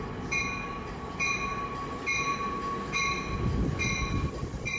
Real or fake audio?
real